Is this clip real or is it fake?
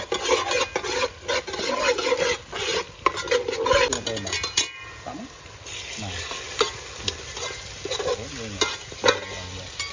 real